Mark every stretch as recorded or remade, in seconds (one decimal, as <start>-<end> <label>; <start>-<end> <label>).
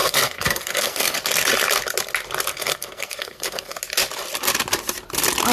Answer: 0.0-1.2 remade; 1.2-2.5 recorded; 2.5-3.8 remade; 3.8-5.5 recorded